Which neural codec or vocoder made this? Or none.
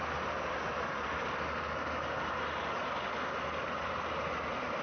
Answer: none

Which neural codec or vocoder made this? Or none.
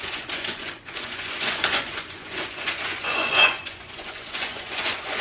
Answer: vocoder, Vocos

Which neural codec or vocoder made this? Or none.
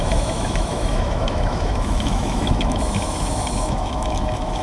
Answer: autoencoder, DAC-VAE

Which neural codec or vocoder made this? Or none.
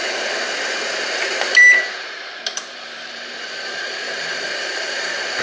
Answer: vocoder, BigVGAN v2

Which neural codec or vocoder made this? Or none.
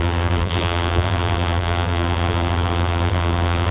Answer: vocoder, BigVGAN v2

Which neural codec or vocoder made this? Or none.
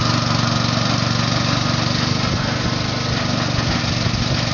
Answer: none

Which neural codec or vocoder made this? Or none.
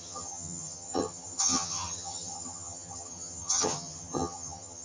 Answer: vocoder, HiFi-GAN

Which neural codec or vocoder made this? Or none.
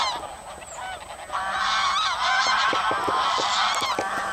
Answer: none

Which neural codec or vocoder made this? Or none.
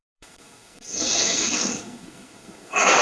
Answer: codec, SNAC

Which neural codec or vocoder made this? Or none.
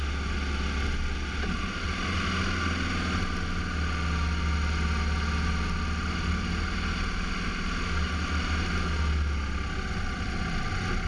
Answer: none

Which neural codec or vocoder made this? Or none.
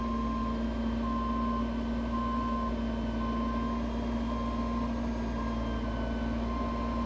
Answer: none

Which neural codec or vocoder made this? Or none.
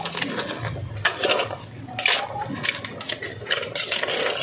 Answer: none